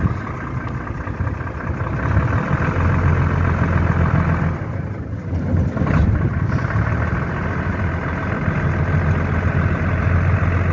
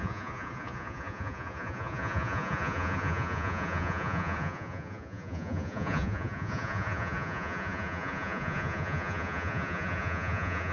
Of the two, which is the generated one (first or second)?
second